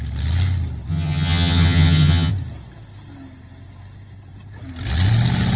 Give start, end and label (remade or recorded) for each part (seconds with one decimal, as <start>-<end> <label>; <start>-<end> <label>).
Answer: 0.0-0.9 recorded; 0.9-2.3 remade; 2.3-5.6 recorded